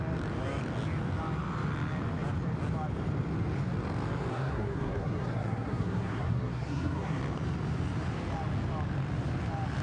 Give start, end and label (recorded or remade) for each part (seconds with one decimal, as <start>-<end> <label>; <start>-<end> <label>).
0.0-4.3 recorded; 4.3-7.2 remade; 7.2-9.8 recorded